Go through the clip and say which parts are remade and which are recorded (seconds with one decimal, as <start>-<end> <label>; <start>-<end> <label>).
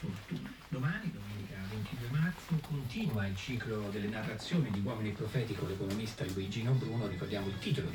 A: 0.0-7.9 recorded